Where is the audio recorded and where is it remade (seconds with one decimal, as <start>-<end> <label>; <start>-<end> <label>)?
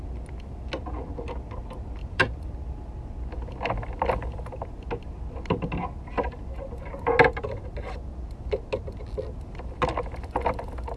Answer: 0.0-2.0 recorded; 2.0-2.5 remade; 2.5-11.0 recorded